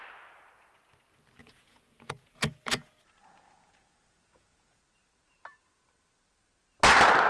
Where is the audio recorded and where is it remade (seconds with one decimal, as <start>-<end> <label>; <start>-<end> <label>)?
0.0-1.4 recorded; 1.4-4.8 remade; 4.8-7.3 recorded